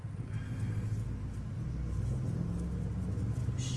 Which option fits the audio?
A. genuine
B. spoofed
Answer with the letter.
A